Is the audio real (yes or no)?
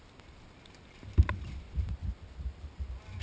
yes